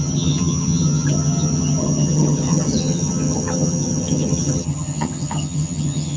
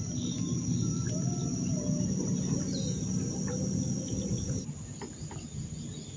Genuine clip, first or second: second